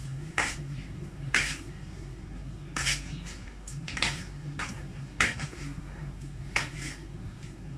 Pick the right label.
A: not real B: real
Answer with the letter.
A